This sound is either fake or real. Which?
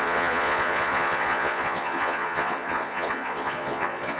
fake